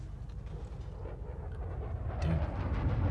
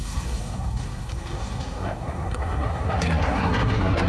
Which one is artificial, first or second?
second